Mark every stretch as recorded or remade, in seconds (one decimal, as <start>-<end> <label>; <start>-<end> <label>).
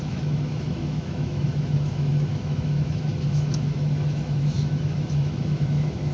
0.0-6.1 remade